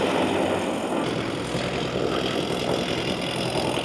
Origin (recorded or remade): recorded